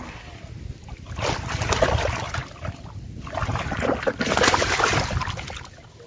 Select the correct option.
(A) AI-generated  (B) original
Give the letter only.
B